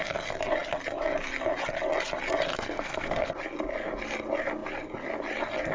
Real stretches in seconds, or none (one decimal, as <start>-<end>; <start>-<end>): 0.0-2.5; 3.3-5.7